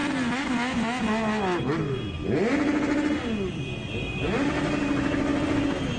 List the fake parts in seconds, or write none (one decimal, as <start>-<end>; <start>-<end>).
none